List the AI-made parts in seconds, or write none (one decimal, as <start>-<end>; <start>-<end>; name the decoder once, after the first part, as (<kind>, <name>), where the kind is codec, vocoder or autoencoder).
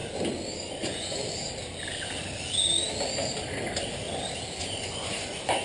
0.6-1.2 (vocoder, Vocos); 4.6-5.6